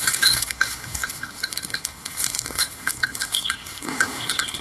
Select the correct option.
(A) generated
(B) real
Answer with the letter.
A